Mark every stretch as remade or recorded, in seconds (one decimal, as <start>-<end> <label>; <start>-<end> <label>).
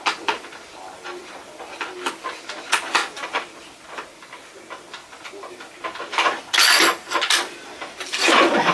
0.0-8.7 recorded